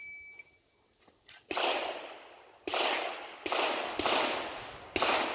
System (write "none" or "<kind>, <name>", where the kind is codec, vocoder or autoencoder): none